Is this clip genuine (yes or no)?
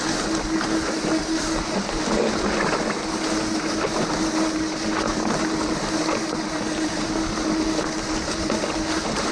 yes